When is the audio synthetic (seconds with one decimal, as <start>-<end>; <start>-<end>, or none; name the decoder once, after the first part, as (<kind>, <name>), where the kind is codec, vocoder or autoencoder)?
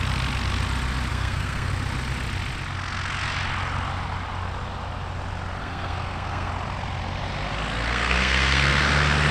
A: 1.1-1.7 (codec, SNAC); 5.6-6.5; 7.9-8.8